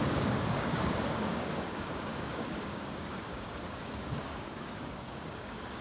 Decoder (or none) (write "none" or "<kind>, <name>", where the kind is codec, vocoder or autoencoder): codec, DAC